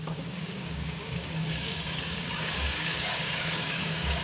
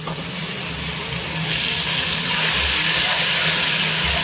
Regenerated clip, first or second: first